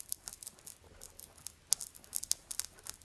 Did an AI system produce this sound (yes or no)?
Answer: no